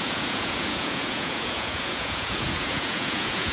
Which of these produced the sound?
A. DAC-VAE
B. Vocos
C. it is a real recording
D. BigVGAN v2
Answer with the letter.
B